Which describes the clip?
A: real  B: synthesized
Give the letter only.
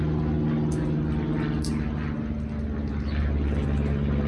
A